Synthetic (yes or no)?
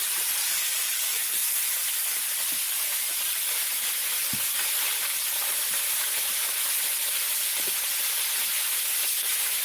yes